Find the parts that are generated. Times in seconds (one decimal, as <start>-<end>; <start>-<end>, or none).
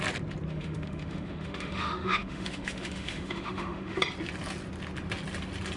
0.5-4.0